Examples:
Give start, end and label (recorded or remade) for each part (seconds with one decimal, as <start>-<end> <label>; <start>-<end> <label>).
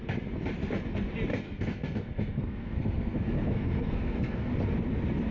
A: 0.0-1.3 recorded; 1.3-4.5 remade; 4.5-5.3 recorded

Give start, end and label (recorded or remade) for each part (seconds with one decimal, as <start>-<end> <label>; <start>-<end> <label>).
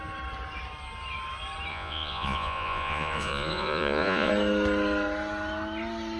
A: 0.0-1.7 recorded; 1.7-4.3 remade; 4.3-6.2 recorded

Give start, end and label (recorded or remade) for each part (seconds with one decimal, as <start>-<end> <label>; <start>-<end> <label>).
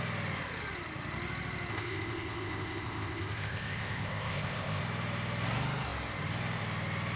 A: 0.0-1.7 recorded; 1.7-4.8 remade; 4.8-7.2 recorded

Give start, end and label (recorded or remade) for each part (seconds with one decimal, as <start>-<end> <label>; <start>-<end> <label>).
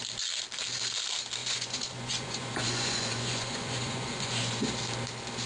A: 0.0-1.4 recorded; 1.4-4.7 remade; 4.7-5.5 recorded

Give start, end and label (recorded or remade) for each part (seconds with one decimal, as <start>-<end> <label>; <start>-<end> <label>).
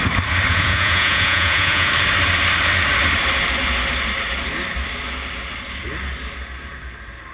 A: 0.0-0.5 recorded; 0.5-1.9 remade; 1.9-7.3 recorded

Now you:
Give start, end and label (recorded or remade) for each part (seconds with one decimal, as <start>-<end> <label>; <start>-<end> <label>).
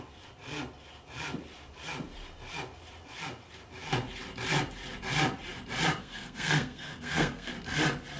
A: 0.0-6.0 recorded; 6.0-7.5 remade; 7.5-8.2 recorded